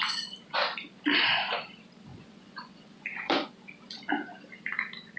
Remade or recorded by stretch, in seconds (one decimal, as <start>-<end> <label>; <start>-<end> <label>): 0.0-2.1 recorded; 2.1-3.5 remade; 3.5-5.2 recorded